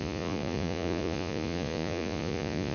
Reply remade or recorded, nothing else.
remade